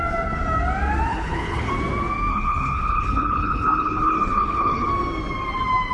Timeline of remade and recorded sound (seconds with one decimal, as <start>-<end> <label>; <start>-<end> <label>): 0.0-1.1 recorded; 1.1-1.7 remade; 1.7-2.3 recorded; 2.3-4.9 remade; 4.9-5.9 recorded